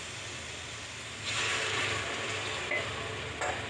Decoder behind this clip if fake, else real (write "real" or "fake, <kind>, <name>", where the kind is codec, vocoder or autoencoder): real